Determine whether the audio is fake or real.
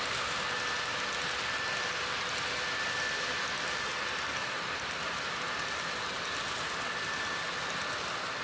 real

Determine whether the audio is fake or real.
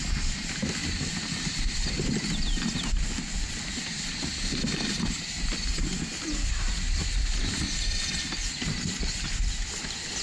real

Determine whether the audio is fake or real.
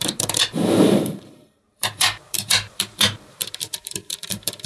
fake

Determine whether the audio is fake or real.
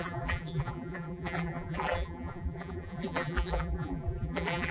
fake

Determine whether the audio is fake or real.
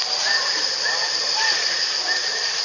fake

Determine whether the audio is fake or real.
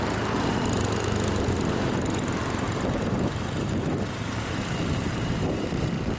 fake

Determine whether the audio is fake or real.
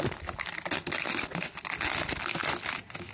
real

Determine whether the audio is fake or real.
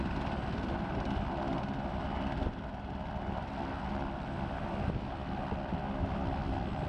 real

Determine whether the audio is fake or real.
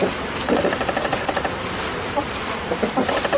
real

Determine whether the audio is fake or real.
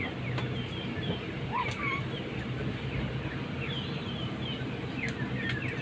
fake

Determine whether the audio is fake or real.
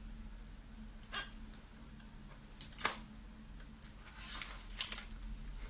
real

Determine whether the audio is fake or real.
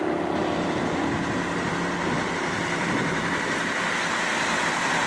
real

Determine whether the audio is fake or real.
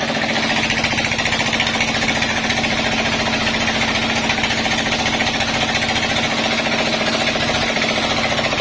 real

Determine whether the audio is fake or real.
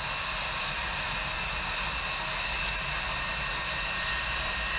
real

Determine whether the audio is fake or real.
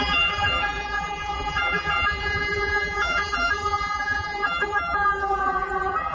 fake